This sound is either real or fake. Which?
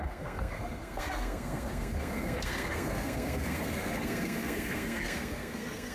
fake